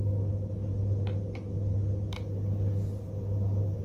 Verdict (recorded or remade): recorded